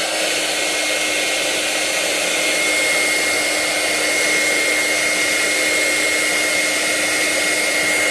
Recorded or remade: recorded